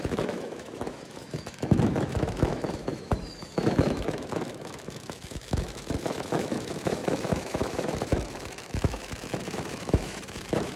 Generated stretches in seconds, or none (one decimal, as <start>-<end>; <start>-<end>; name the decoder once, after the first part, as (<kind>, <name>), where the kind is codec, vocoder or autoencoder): 0.0-10.8 (autoencoder, DAC-VAE)